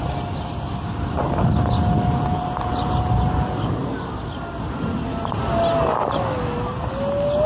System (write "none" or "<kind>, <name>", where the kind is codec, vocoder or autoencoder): none